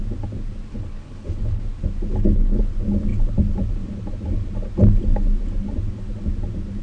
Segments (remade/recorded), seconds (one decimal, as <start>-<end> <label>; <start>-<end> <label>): 0.0-0.7 recorded; 0.7-1.6 remade; 1.6-2.1 recorded; 2.1-2.6 remade; 2.6-6.8 recorded